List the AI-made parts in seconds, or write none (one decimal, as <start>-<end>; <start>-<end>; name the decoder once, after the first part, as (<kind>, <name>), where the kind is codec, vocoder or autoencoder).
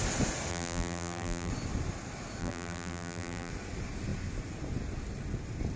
0.5-1.5 (vocoder, BigVGAN v2); 2.4-3.5